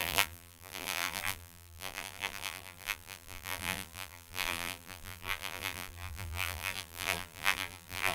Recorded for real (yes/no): no